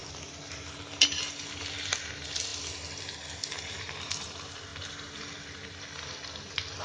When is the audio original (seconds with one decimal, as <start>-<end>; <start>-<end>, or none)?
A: 0.0-6.8